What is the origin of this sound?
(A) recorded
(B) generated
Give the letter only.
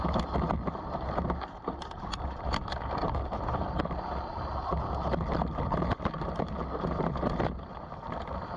B